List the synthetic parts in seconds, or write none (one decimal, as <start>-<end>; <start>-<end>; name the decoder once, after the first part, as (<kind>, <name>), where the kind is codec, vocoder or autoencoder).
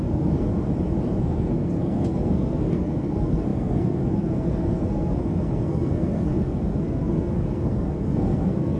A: 0.0-0.5 (codec, SNAC); 1.2-8.8